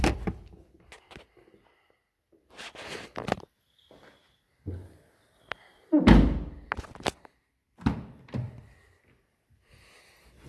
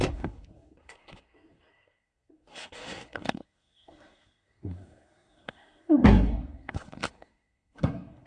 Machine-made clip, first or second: second